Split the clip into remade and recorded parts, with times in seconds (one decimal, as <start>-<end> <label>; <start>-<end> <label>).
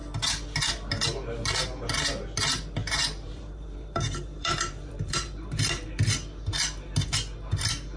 0.0-2.8 recorded; 2.8-5.9 remade; 5.9-8.0 recorded